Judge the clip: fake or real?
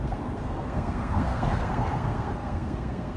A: fake